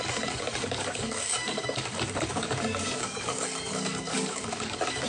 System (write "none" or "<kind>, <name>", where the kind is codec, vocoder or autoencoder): codec, DAC